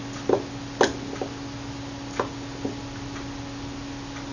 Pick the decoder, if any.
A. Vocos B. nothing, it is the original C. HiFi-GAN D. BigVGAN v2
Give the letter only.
B